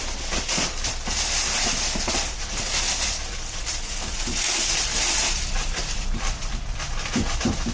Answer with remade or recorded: remade